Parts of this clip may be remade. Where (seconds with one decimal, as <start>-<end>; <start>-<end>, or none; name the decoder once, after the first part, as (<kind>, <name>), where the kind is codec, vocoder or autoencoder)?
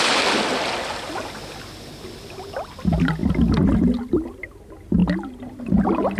none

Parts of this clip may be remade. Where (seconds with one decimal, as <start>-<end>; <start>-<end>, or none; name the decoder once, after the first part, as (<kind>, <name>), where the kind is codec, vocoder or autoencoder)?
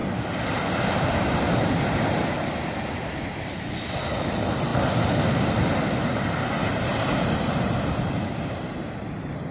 0.0-1.4 (vocoder, BigVGAN v2); 6.9-8.6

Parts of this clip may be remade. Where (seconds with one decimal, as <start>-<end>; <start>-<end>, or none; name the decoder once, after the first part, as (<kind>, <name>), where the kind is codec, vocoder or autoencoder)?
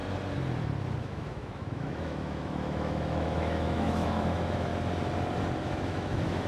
1.0-4.7 (autoencoder, DAC-VAE); 5.6-6.5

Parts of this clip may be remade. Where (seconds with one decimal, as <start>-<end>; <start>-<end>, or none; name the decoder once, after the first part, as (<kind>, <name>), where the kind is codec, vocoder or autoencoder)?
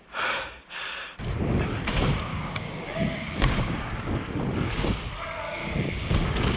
2.3-4.2 (codec, DAC); 5.6-6.6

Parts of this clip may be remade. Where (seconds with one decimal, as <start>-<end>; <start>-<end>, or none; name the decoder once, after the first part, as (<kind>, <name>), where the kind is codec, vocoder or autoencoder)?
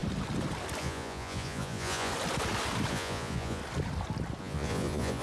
0.8-2.1 (vocoder, Vocos); 2.9-3.6; 4.4-5.2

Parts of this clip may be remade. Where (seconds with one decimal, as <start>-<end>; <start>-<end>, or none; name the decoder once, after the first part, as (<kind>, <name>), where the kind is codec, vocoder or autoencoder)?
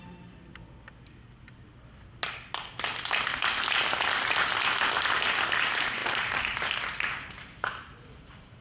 0.0-0.6 (vocoder, BigVGAN v2); 5.6-8.6